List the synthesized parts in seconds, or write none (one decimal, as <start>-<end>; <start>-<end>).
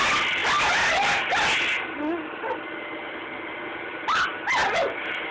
none